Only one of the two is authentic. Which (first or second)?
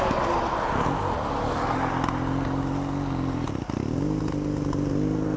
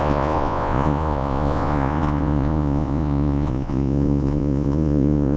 first